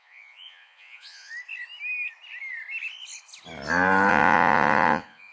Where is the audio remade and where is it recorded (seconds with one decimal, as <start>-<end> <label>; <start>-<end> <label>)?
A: 0.0-1.3 remade; 1.3-4.1 recorded; 4.1-5.3 remade